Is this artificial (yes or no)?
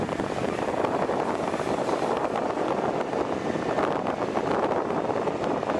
no